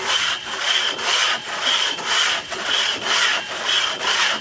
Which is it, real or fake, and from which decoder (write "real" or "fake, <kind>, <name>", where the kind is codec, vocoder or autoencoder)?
real